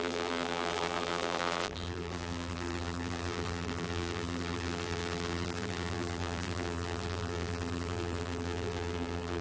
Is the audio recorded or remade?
remade